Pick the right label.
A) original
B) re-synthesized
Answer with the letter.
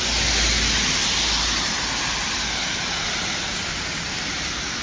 A